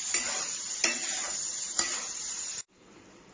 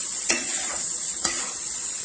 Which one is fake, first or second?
second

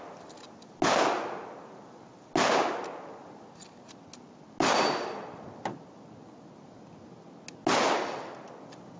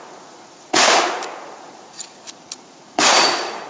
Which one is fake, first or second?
second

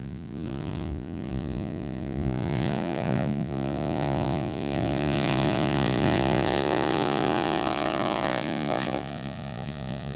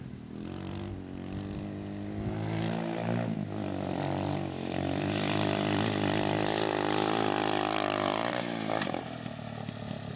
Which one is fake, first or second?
first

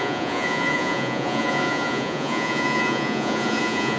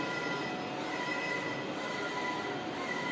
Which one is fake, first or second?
first